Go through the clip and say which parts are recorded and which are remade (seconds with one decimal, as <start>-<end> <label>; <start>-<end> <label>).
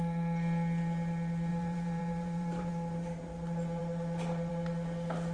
0.0-1.5 recorded; 1.5-2.7 remade; 2.7-5.3 recorded